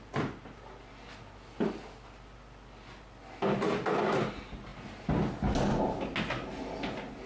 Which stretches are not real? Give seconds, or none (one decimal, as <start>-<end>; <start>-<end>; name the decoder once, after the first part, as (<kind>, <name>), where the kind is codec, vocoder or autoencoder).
none

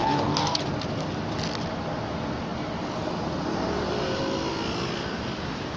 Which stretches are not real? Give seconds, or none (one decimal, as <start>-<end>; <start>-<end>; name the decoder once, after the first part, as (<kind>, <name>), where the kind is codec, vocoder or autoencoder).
0.0-0.6 (codec, DAC)

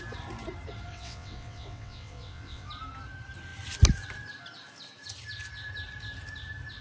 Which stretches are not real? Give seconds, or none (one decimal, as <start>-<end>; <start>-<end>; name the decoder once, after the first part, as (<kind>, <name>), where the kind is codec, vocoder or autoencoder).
0.9-2.7 (vocoder, WaveNeXt)

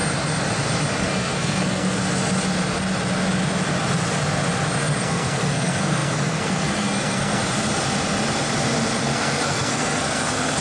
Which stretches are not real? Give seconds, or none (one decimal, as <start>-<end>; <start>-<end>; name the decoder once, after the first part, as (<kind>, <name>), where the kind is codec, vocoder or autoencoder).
1.0-2.0 (codec, SNAC); 4.8-7.4; 9.0-10.6

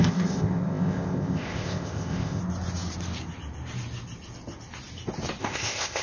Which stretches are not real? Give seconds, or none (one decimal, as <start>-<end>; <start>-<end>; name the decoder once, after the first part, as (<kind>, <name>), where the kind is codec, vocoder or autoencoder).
0.0-2.4 (codec, ZipCodec); 5.4-6.0

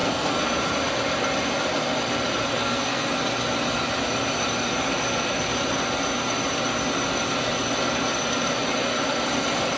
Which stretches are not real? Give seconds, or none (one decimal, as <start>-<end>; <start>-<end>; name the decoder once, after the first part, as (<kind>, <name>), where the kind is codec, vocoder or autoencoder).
0.0-0.6 (codec, SNAC); 2.5-3.1

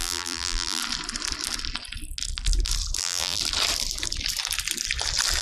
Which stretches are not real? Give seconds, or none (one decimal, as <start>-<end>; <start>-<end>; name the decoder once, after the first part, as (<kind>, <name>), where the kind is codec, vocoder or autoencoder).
0.0-0.8 (vocoder, BigVGAN v2); 3.0-3.4

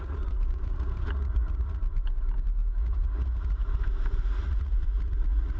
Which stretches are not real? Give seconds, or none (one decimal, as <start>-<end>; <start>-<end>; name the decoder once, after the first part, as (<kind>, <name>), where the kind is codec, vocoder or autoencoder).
0.0-1.8 (vocoder, Vocos); 2.8-3.6; 4.4-5.6